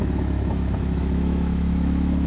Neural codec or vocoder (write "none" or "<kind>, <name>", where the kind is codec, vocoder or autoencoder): autoencoder, DAC-VAE